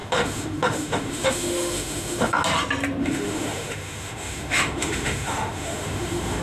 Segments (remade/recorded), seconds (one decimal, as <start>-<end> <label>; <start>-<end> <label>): 0.0-2.3 remade; 2.3-3.0 recorded; 3.0-6.4 remade